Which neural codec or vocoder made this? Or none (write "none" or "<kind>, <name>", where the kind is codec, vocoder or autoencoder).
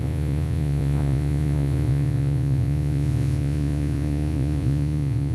vocoder, Vocos